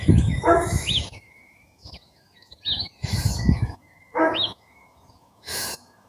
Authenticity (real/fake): fake